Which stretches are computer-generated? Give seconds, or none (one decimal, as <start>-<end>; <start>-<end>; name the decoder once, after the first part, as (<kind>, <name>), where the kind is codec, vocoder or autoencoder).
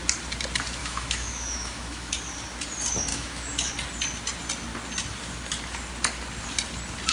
0.8-2.1 (autoencoder, DAC-VAE); 3.1-3.7